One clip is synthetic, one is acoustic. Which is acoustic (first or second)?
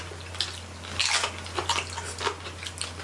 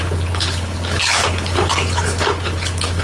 first